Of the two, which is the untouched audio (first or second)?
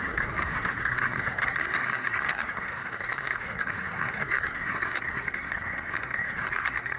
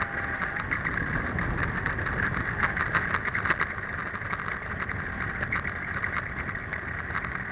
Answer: second